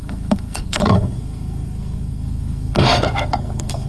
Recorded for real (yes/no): no